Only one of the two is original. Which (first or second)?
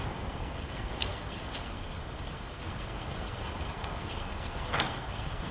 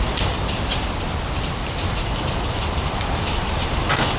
second